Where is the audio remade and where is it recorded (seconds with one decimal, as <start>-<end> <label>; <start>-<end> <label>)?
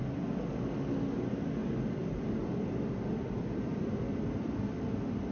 0.0-1.6 recorded; 1.6-4.8 remade; 4.8-5.3 recorded